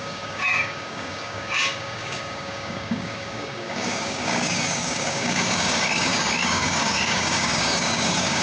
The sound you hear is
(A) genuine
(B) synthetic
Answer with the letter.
B